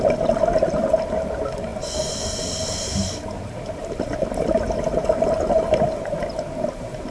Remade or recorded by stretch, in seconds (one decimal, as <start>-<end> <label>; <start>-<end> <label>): 0.0-7.1 recorded